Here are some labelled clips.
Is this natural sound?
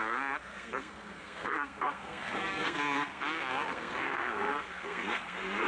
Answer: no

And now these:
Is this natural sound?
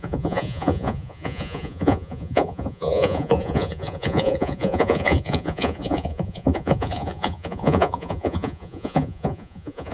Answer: no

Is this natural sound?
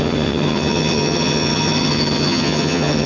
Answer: no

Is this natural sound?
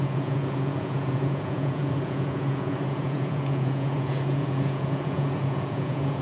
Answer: no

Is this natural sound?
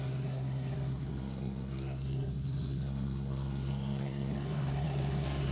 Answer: no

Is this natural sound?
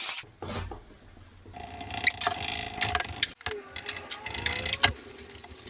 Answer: yes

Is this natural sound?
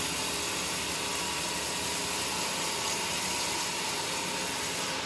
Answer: yes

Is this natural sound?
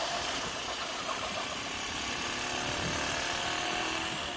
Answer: yes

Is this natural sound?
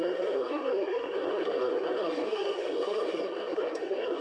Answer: no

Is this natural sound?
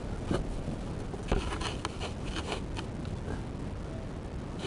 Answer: yes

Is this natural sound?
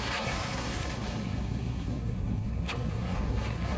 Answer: no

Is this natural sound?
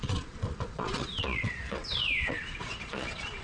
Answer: no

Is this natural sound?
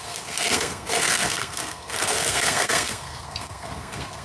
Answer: no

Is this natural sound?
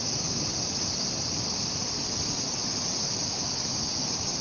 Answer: yes